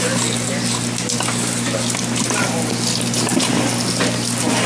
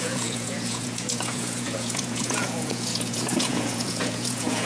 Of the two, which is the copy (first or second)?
second